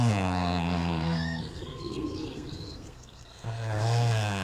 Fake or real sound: fake